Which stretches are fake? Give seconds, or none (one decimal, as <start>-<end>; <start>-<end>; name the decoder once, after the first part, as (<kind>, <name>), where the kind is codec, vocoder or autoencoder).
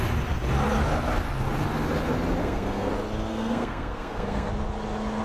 2.4-2.9 (codec, SNAC); 3.3-4.5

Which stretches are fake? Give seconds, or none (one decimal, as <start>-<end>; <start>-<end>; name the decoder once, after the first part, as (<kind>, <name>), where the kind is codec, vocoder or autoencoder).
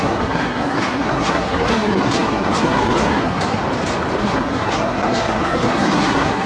0.0-3.6 (codec, SNAC); 4.2-6.5